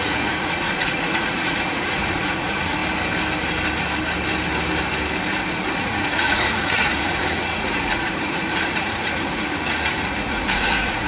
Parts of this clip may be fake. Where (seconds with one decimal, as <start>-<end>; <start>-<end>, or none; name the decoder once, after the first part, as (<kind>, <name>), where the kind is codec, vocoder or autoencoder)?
0.0-2.8 (vocoder, Vocos); 5.7-11.1

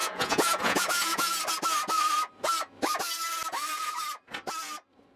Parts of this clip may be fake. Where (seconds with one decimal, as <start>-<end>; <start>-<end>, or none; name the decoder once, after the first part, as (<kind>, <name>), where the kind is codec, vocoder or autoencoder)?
0.0-1.4 (vocoder, Vocos)

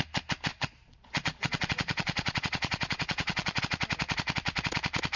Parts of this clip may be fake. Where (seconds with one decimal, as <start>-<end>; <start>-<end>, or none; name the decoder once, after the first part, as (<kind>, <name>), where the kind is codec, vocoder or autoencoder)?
0.5-3.6 (vocoder, Vocos)